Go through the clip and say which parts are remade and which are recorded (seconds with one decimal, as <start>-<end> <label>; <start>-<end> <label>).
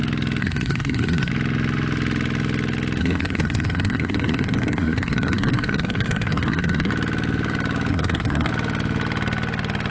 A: 0.0-0.4 recorded; 0.4-1.3 remade; 1.3-3.0 recorded; 3.0-6.9 remade; 6.9-7.9 recorded; 7.9-8.5 remade; 8.5-9.9 recorded